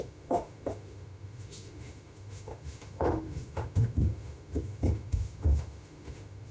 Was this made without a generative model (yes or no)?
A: no